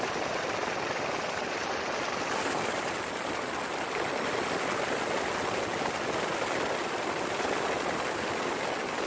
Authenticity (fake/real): real